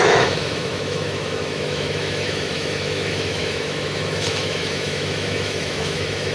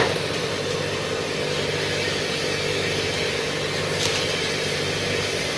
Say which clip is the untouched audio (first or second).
second